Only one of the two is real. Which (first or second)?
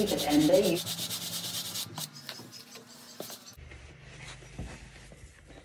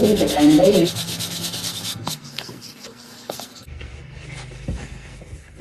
first